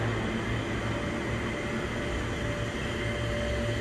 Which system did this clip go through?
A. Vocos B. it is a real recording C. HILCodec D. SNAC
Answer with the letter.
B